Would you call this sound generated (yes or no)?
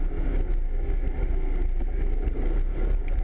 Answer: no